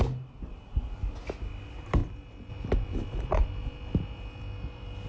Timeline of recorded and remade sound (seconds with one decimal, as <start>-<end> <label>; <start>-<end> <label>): 0.0-5.1 recorded